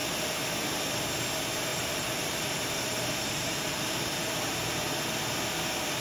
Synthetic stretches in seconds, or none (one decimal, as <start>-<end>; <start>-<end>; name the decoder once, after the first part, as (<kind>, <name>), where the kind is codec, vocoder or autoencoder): 1.7-4.7 (vocoder, BigVGAN v2)